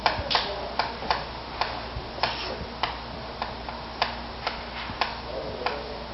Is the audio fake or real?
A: real